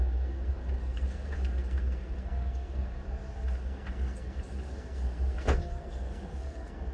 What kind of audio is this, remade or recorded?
remade